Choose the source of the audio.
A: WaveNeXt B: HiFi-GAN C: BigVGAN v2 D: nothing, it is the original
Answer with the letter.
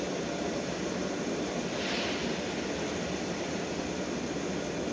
D